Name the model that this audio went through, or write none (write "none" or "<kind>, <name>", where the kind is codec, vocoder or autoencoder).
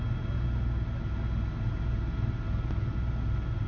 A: none